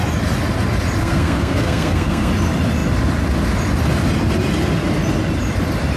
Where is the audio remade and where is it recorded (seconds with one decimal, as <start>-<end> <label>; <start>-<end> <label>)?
0.0-1.0 recorded; 1.0-2.3 remade; 2.3-6.0 recorded